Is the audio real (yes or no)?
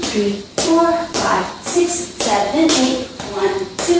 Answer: no